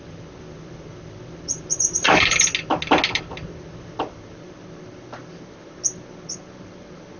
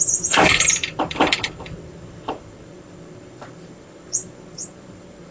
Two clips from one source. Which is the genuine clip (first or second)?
first